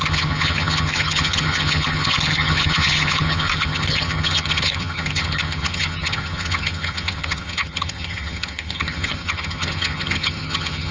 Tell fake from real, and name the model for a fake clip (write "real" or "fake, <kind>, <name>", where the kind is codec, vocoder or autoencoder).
fake, vocoder, HiFi-GAN